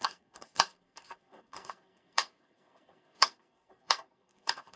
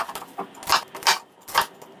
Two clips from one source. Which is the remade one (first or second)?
first